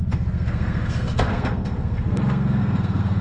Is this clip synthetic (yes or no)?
yes